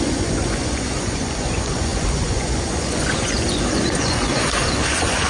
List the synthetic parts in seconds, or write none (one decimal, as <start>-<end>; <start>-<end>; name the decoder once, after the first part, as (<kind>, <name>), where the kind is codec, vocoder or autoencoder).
0.0-5.3 (vocoder, Vocos)